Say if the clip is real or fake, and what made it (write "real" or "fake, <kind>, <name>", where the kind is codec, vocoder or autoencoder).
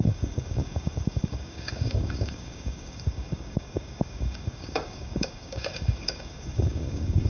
fake, codec, DAC